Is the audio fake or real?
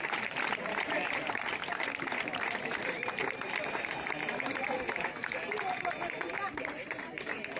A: fake